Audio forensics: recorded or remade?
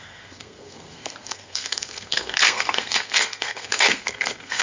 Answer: remade